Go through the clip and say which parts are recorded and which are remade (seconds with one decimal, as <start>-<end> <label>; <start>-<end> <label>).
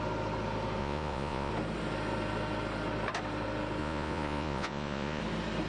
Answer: 0.0-0.8 recorded; 0.8-1.5 remade; 1.5-3.8 recorded; 3.8-5.2 remade; 5.2-5.7 recorded